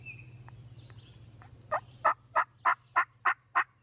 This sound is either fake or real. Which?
real